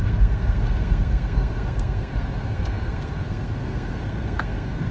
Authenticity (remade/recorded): remade